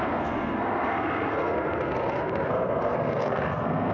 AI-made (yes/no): yes